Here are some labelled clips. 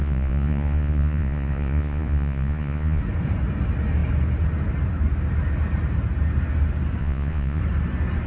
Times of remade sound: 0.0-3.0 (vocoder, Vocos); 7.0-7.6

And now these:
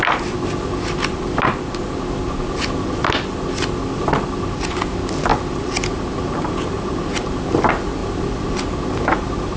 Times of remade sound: 5.3-7.0 (vocoder, BigVGAN v2); 8.0-8.6

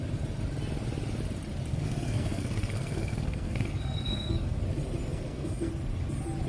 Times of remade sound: 1.7-4.6 (codec, SNAC); 5.1-5.7

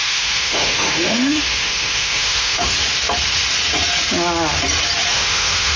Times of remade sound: 0.0-2.7 (autoencoder, DAC-VAE); 5.1-5.8

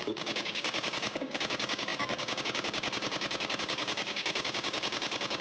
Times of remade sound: 0.0-5.4 (codec, DAC)